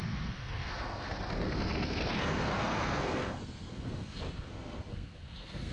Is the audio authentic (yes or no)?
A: no